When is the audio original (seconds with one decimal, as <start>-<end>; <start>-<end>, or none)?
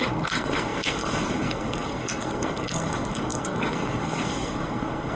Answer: none